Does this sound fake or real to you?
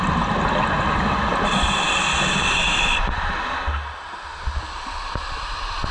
real